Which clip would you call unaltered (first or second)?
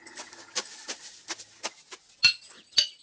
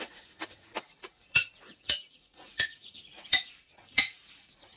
first